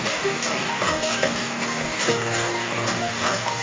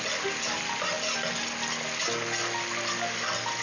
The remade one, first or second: first